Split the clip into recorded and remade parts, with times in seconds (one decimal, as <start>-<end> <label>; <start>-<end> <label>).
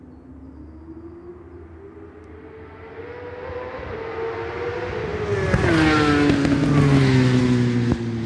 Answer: 0.0-8.3 recorded